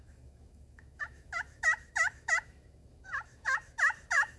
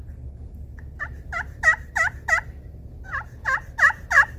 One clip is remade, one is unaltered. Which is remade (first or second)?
first